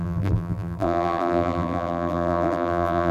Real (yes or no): no